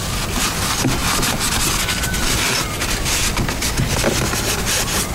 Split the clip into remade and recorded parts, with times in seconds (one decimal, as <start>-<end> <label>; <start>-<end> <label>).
0.0-5.1 recorded